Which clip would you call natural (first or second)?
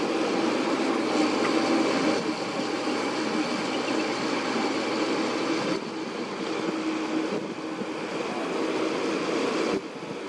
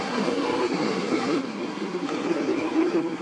first